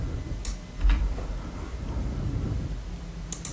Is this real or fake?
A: real